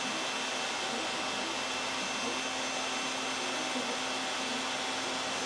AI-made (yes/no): no